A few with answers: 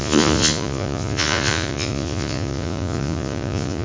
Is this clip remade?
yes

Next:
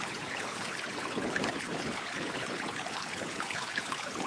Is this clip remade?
yes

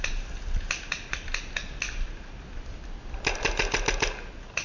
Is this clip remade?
no